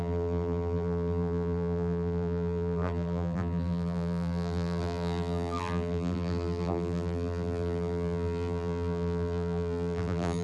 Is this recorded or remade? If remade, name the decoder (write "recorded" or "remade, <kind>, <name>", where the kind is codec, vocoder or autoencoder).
remade, vocoder, BigVGAN v2